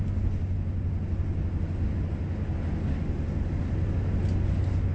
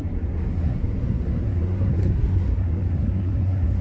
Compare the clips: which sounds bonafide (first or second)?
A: first